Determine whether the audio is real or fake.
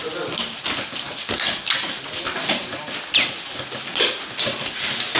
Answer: real